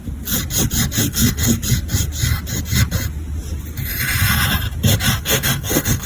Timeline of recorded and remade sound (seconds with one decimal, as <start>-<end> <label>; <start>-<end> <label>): 0.0-1.1 recorded; 1.1-1.5 remade; 1.5-5.2 recorded; 5.2-6.1 remade